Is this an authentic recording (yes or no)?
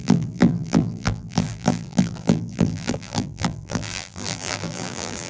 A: no